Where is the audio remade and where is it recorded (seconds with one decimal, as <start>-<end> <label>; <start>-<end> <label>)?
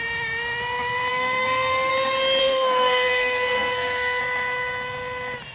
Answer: 0.0-1.1 recorded; 1.1-1.9 remade; 1.9-2.4 recorded; 2.4-4.2 remade; 4.2-5.5 recorded